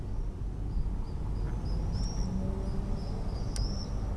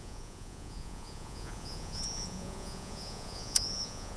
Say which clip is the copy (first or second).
second